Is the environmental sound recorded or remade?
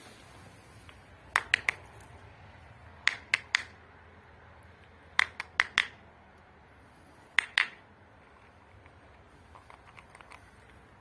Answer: recorded